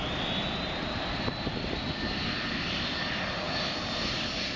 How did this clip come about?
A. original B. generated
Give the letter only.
A